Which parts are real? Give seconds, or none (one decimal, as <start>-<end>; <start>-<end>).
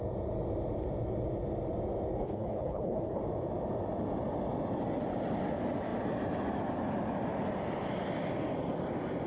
0.0-2.2; 3.2-9.3